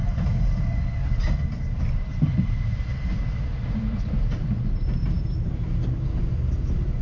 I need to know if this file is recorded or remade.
recorded